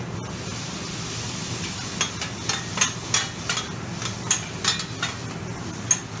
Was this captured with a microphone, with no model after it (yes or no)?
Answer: yes